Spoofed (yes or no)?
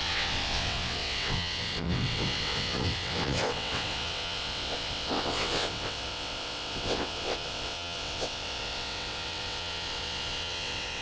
yes